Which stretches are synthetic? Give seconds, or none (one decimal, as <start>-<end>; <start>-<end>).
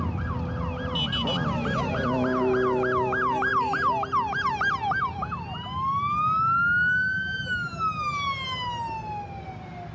none